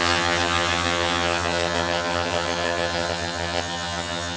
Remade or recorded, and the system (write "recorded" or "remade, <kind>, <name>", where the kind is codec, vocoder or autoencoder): remade, vocoder, HiFi-GAN